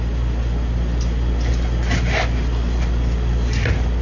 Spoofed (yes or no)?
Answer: no